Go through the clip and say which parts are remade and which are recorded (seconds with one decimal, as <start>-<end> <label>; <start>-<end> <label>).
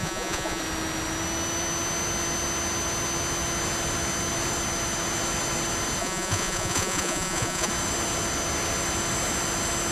0.0-0.6 remade; 0.6-6.0 recorded; 6.0-7.7 remade; 7.7-9.9 recorded